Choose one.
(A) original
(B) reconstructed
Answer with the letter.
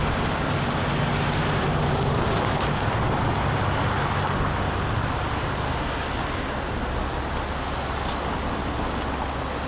A